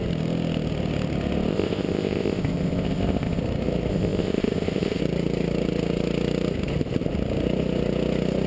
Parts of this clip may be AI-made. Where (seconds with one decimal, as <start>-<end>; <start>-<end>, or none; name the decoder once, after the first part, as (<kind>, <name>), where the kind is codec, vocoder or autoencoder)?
1.5-3.4 (codec, ZipCodec); 3.9-5.0